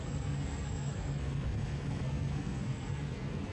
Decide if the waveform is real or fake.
fake